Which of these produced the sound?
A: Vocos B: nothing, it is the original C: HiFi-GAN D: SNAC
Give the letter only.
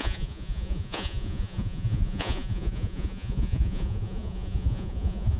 A